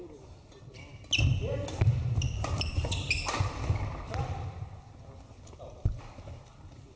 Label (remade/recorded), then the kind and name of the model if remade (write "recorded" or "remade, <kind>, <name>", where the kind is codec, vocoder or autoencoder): recorded